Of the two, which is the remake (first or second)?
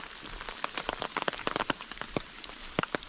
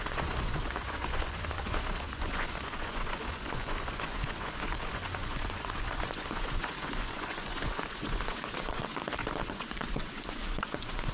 second